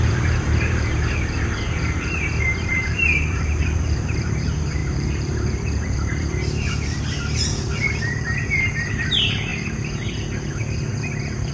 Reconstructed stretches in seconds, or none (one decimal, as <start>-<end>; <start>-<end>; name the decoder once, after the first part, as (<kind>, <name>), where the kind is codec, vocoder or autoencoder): 0.0-9.5 (vocoder, BigVGAN v2); 10.5-11.5